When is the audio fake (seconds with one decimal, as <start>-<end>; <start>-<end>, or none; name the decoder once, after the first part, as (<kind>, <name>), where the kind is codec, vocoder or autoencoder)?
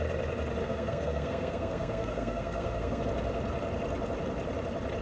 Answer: 0.6-3.0 (codec, SNAC)